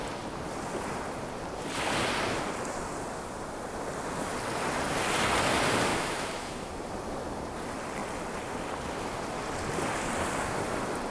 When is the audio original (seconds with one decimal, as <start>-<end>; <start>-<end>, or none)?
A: 0.0-5.9; 6.7-11.1